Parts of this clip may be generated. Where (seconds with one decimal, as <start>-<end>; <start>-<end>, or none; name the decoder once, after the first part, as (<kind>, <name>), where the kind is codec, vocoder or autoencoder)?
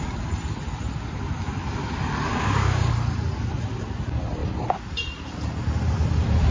2.3-2.9 (codec, DAC)